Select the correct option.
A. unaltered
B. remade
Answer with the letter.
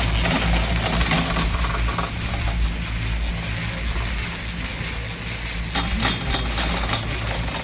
A